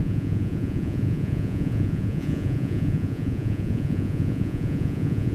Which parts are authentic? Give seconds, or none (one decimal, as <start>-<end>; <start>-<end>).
none